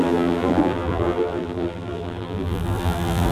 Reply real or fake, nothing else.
fake